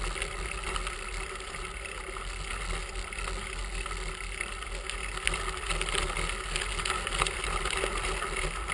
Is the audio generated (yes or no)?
no